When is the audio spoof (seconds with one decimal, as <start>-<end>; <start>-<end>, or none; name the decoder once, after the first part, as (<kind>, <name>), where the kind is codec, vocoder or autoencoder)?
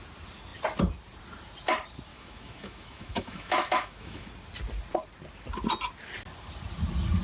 2.1-4.3 (autoencoder, DAC-VAE)